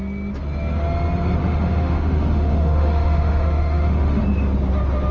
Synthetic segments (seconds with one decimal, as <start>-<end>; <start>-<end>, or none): 1.4-4.2